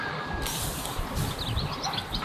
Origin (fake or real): real